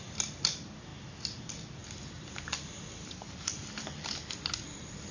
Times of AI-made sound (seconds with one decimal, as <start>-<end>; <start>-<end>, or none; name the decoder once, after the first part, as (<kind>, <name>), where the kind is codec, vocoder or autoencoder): none